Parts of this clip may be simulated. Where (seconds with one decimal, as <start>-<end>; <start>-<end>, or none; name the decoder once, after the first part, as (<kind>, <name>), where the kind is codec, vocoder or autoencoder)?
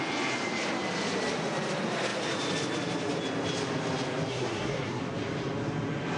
4.3-5.0 (codec, SNAC)